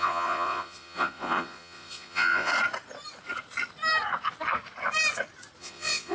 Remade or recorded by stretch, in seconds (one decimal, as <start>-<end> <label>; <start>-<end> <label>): 0.0-2.5 remade; 2.5-5.6 recorded; 5.6-6.1 remade